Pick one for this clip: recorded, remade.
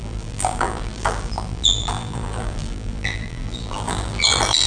remade